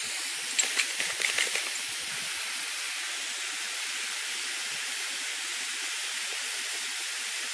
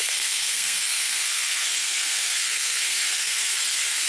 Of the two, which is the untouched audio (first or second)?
first